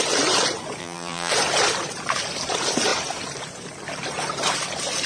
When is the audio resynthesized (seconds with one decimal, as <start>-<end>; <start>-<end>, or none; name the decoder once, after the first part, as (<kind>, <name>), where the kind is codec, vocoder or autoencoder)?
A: 0.8-1.3 (vocoder, BigVGAN v2)